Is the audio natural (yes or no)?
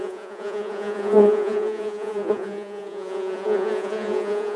no